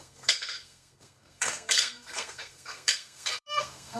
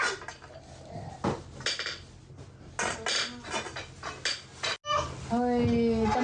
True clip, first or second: second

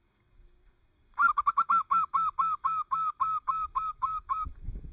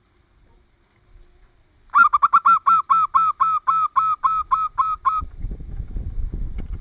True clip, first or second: second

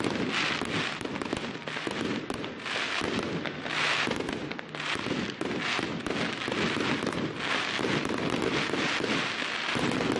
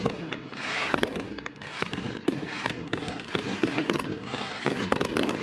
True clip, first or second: first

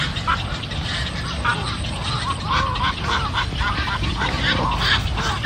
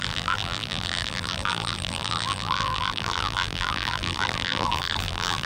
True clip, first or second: first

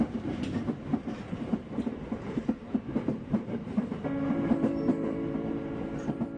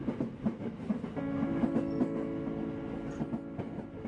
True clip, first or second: second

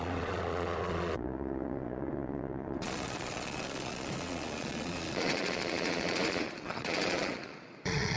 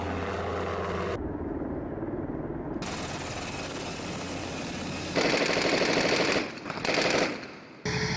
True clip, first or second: second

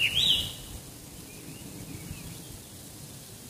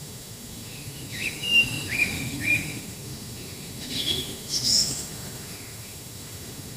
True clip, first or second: first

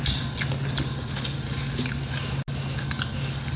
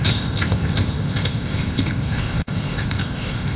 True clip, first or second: first